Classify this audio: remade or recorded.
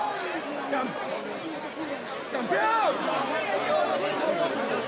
recorded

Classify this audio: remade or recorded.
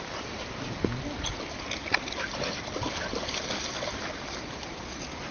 recorded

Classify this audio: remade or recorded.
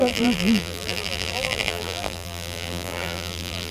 remade